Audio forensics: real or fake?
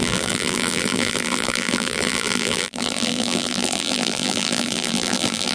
fake